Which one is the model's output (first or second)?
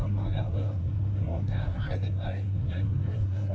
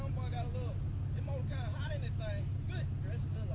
first